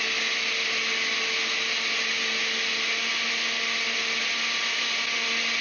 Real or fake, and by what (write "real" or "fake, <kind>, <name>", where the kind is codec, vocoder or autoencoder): real